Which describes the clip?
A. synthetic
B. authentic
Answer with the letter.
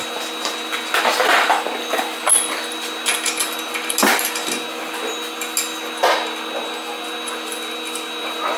B